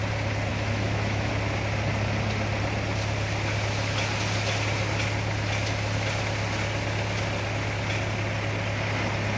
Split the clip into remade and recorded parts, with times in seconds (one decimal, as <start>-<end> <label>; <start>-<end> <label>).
0.0-0.5 recorded; 0.5-1.3 remade; 1.3-9.4 recorded